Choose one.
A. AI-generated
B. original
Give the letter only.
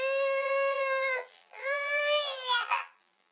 A